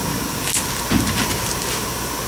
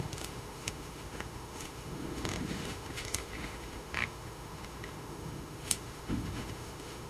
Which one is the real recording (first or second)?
first